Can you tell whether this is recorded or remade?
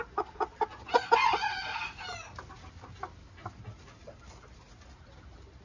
recorded